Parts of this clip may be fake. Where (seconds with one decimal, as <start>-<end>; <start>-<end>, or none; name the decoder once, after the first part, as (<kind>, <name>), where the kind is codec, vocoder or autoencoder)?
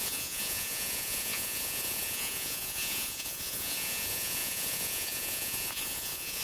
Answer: 0.0-6.4 (vocoder, Vocos)